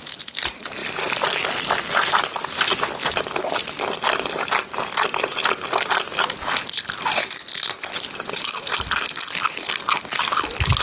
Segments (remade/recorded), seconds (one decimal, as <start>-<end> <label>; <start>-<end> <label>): 0.0-10.8 recorded